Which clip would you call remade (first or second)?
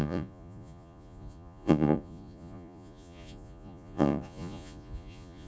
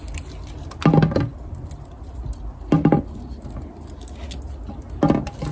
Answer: first